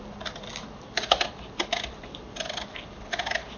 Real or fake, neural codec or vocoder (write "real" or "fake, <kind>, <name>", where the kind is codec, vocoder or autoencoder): real